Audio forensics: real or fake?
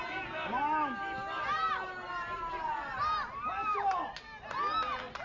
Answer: real